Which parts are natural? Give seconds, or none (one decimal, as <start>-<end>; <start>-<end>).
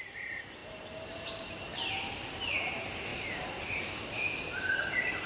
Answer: 0.0-3.1; 3.9-5.3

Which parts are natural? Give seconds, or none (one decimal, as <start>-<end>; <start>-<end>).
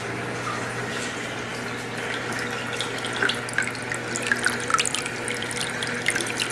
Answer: 0.0-4.7; 5.7-6.5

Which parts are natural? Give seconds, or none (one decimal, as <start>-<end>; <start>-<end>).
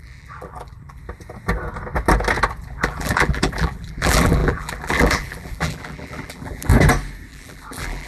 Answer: 1.0-2.6; 6.7-7.3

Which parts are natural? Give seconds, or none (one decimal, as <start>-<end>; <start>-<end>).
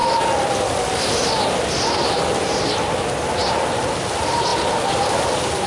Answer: 0.0-3.4; 4.1-5.7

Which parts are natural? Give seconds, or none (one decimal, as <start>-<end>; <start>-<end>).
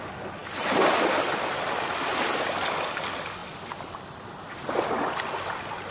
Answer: 0.0-5.9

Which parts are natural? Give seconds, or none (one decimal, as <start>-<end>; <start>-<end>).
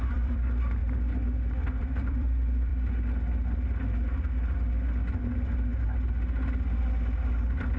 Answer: 0.8-1.8; 2.7-5.2; 5.7-6.8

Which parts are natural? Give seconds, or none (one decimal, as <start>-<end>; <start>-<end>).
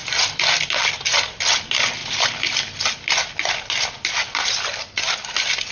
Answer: 0.0-5.7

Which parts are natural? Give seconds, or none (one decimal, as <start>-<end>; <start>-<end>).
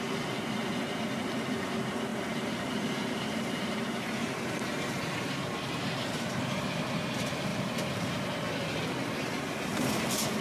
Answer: 0.0-2.1; 6.7-7.5; 8.2-9.7